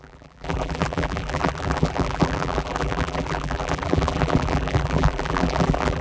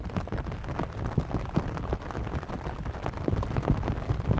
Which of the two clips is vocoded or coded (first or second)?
first